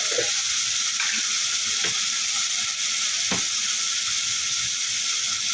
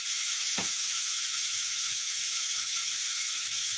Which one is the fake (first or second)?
second